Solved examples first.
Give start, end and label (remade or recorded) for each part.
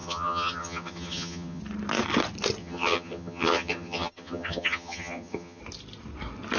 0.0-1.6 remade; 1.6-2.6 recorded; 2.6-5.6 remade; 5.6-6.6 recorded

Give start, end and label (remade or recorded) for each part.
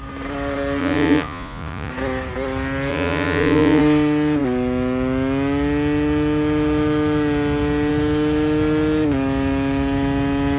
0.0-0.8 recorded; 0.8-1.9 remade; 1.9-2.9 recorded; 2.9-3.8 remade; 3.8-10.6 recorded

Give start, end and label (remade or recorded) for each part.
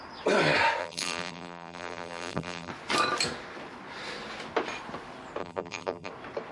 0.0-0.8 recorded; 0.8-2.7 remade; 2.7-5.4 recorded; 5.4-6.1 remade; 6.1-6.5 recorded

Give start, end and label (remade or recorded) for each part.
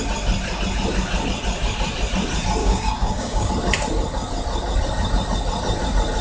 0.0-2.6 recorded; 2.6-3.5 remade; 3.5-6.2 recorded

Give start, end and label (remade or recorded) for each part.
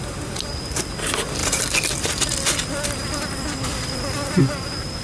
0.0-1.4 recorded; 1.4-4.4 remade; 4.4-5.0 recorded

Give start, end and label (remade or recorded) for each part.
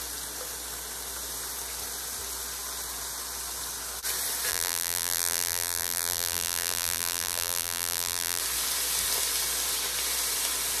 0.0-4.5 recorded; 4.5-8.4 remade; 8.4-10.8 recorded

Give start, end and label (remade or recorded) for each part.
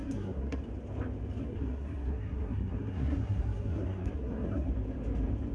0.0-0.6 remade; 0.6-1.4 recorded; 1.4-4.7 remade; 4.7-5.5 recorded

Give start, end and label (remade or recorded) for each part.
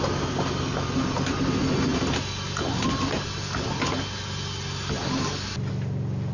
0.0-6.3 recorded